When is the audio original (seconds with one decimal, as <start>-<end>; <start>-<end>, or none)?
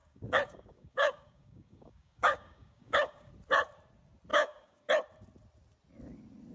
3.3-4.3; 4.9-6.5